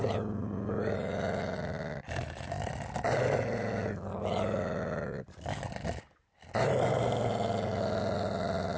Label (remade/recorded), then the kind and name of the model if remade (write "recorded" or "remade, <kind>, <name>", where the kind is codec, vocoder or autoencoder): recorded